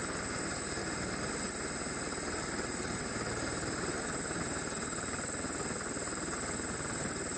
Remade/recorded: recorded